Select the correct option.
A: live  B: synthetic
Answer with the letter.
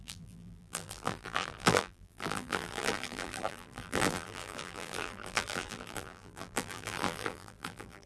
B